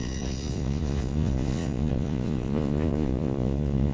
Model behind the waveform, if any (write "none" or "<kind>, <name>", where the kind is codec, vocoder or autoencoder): vocoder, Vocos